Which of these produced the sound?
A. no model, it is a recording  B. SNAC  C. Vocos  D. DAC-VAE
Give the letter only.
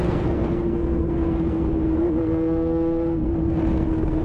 B